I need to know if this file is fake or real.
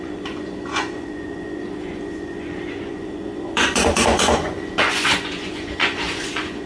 fake